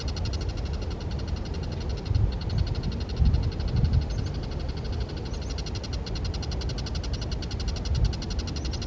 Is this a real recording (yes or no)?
yes